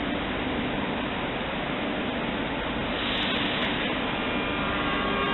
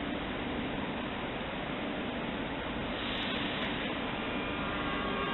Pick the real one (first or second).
first